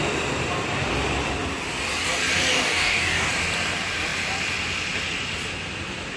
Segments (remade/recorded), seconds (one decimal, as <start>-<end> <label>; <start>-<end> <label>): 0.0-2.5 recorded; 2.5-3.3 remade; 3.3-6.2 recorded